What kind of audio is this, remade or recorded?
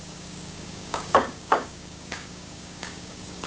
remade